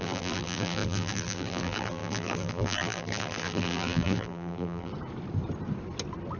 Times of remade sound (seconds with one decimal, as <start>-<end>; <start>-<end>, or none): 0.0-4.9